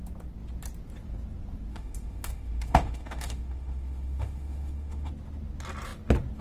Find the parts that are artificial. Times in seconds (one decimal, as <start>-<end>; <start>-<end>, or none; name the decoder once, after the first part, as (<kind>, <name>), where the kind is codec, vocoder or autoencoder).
1.7-5.1 (autoencoder, DAC-VAE)